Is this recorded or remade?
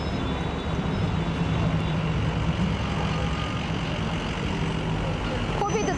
recorded